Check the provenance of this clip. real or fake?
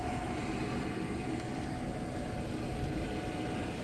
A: real